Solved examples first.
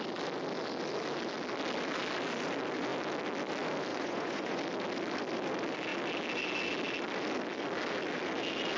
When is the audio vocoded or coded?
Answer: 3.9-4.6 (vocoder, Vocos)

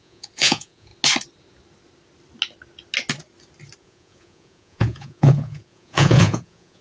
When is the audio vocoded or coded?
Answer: 0.0-0.9 (vocoder, Vocos); 3.8-6.8

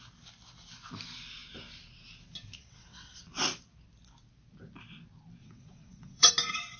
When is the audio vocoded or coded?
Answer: 2.6-3.2 (vocoder, WaveNeXt); 5.4-6.3